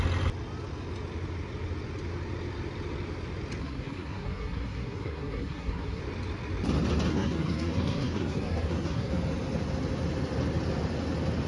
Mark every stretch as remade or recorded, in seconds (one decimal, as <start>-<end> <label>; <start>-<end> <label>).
0.0-3.6 recorded; 3.6-6.0 remade; 6.0-7.1 recorded; 7.1-9.1 remade; 9.1-11.5 recorded